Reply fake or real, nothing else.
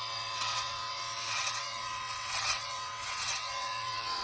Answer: fake